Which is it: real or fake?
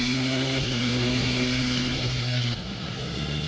fake